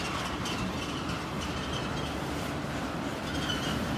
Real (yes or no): yes